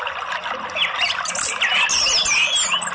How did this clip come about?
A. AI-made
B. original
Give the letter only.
B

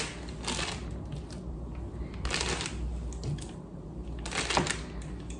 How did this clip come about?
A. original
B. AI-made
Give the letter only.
A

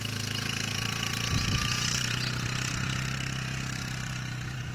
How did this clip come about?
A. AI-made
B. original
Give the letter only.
A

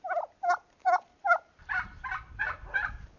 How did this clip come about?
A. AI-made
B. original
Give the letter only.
B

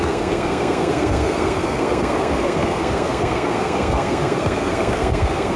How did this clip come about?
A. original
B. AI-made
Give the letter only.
B